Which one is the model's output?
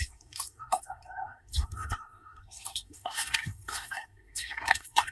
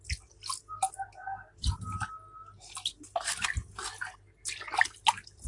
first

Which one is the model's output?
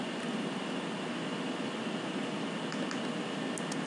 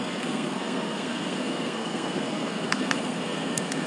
second